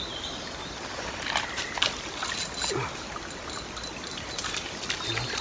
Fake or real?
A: real